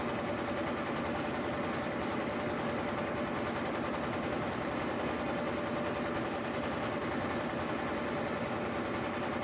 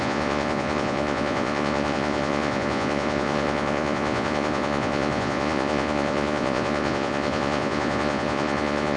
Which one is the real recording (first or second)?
first